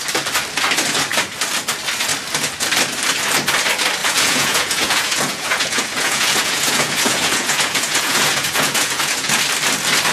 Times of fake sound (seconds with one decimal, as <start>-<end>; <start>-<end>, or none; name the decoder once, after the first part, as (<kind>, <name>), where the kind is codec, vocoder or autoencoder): 4.0-9.3 (vocoder, Vocos)